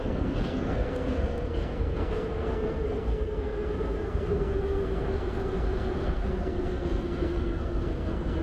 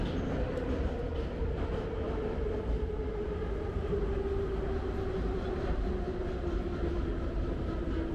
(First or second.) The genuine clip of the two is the second